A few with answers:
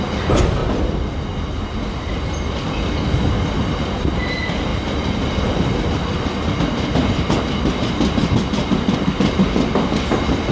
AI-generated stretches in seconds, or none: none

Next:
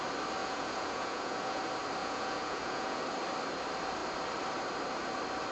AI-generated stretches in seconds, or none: 0.4-1.6 (vocoder, Vocos); 2.0-3.0

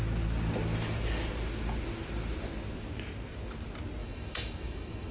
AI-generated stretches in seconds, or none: 4.0-5.1 (autoencoder, DAC-VAE)

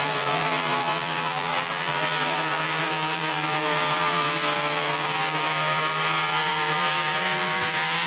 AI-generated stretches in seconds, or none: 0.0-8.1 (vocoder, BigVGAN v2)

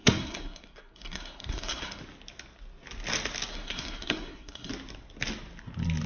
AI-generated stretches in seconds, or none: 0.0-2.0 (codec, SNAC); 3.5-4.7

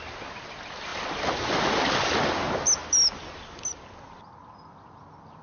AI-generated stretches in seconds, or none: none